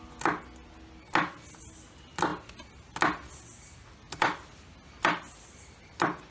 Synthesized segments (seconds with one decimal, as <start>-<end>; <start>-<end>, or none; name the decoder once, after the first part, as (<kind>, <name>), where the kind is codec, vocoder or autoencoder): none